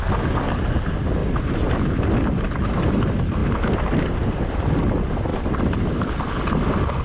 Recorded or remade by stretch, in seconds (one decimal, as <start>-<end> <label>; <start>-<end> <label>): 0.0-7.0 recorded